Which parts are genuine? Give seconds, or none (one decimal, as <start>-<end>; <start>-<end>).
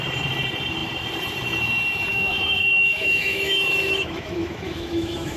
0.0-2.1